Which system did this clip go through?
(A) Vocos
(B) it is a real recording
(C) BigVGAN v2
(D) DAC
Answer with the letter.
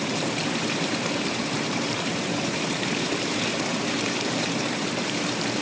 C